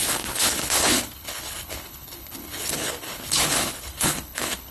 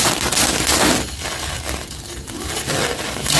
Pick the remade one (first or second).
first